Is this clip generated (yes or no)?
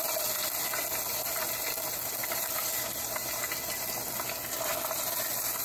no